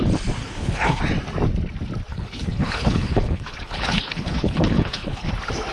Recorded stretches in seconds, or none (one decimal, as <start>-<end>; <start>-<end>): 0.0-0.4; 1.0-2.1; 5.3-5.7